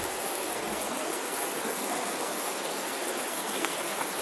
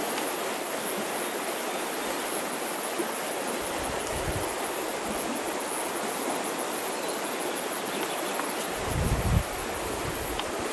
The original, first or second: second